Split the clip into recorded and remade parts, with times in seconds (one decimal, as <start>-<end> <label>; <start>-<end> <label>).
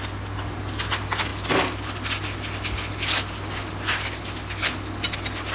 0.0-5.5 recorded